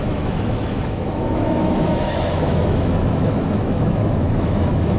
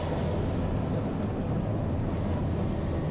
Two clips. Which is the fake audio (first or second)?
first